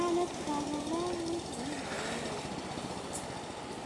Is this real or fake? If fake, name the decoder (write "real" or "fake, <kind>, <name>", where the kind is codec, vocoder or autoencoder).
real